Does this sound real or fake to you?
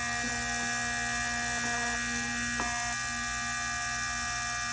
real